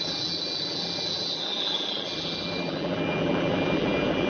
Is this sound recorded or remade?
remade